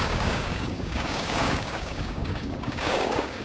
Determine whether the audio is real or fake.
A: fake